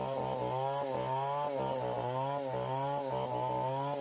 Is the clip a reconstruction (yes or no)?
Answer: no